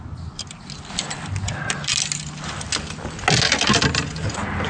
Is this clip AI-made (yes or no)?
no